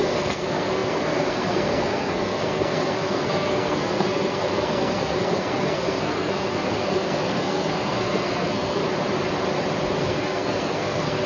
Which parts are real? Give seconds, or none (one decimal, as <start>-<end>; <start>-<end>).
8.8-10.0